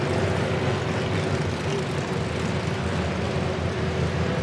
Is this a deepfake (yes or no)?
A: no